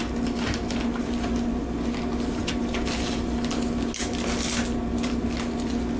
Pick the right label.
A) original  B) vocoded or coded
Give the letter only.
A